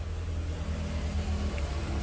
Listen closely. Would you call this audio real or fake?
real